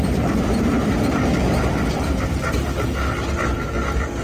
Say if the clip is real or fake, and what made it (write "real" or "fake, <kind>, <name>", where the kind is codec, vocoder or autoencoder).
real